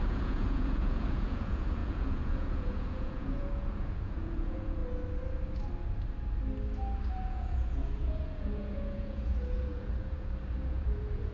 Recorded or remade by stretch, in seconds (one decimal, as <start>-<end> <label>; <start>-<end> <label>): 0.0-4.8 remade; 4.8-7.1 recorded; 7.1-11.3 remade